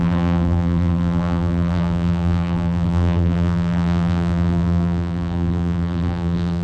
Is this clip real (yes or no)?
no